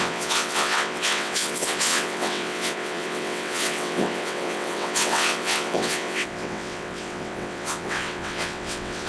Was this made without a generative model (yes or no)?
no